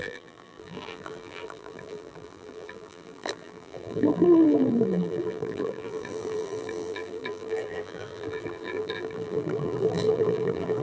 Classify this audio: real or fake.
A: fake